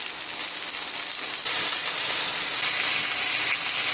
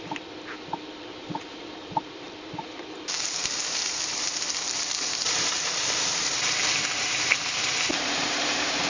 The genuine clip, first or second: first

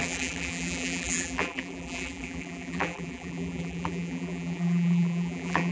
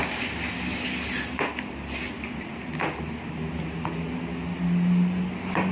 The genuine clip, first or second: second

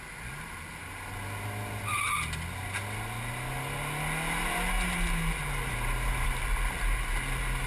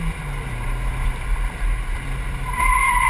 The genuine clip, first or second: first